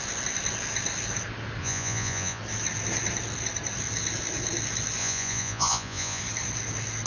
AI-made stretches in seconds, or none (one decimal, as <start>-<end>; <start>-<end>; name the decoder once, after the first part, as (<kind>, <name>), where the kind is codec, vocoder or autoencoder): 1.6-2.4 (vocoder, Vocos); 5.0-6.2